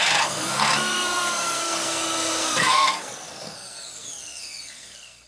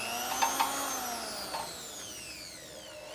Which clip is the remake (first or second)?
first